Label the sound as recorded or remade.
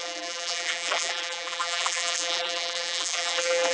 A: remade